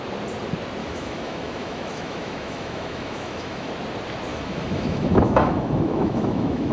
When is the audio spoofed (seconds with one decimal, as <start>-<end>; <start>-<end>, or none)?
0.8-3.7; 4.3-6.7